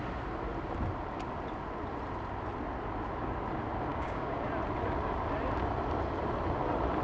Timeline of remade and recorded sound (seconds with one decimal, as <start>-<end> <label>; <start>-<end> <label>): 0.0-3.9 recorded; 3.9-4.5 remade; 4.5-7.0 recorded